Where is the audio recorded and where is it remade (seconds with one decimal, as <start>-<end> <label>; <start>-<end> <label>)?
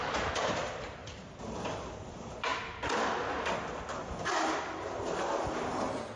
0.0-1.0 remade; 1.0-2.1 recorded; 2.1-2.5 remade; 2.5-6.2 recorded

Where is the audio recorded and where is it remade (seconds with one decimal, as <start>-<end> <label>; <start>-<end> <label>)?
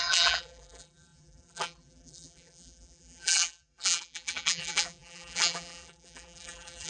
0.0-6.9 remade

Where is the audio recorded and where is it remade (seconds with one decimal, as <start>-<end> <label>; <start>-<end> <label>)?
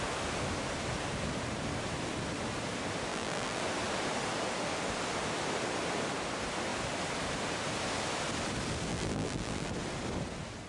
0.0-3.1 recorded; 3.1-3.6 remade; 3.6-8.9 recorded; 8.9-9.7 remade; 9.7-10.7 recorded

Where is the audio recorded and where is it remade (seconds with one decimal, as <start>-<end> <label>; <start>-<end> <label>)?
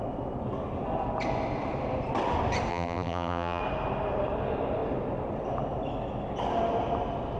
0.0-2.7 recorded; 2.7-3.6 remade; 3.6-7.4 recorded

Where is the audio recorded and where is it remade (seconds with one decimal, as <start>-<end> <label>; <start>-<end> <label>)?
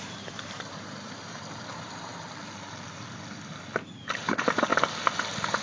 0.0-2.1 remade; 2.1-4.3 recorded; 4.3-4.7 remade; 4.7-5.6 recorded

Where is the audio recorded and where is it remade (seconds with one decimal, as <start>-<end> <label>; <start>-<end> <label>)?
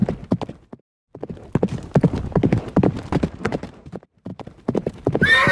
0.0-3.3 recorded; 3.3-5.5 remade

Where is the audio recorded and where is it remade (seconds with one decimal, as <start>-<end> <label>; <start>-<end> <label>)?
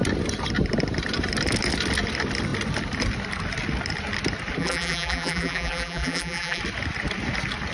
0.0-4.6 recorded; 4.6-6.6 remade; 6.6-7.7 recorded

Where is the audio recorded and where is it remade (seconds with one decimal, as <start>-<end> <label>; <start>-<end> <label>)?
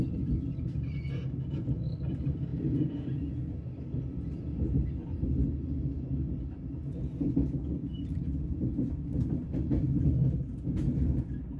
0.0-2.5 recorded; 2.5-3.5 remade; 3.5-7.8 recorded; 7.8-8.5 remade; 8.5-11.6 recorded